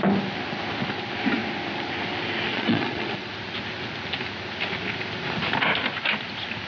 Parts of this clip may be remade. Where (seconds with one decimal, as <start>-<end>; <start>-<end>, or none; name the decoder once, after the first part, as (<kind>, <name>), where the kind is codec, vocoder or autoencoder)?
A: 2.5-3.3 (vocoder, Vocos)